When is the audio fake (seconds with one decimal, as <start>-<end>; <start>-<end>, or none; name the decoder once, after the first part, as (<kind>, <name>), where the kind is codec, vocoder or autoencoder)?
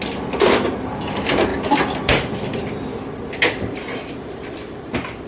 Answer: none